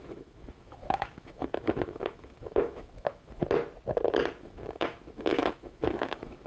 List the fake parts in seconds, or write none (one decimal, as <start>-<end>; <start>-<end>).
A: 0.0-3.4; 4.4-6.5